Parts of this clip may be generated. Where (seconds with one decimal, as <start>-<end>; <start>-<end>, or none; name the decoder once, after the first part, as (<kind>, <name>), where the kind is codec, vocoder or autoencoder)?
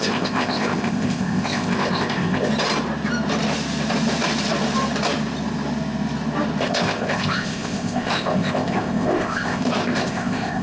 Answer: 0.0-2.5 (codec, ZipCodec); 6.6-10.6